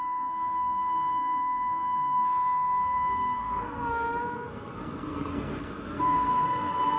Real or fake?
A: fake